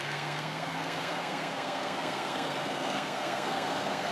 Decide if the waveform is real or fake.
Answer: fake